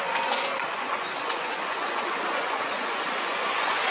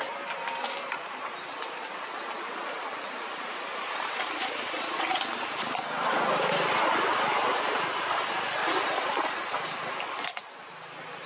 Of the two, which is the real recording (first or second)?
second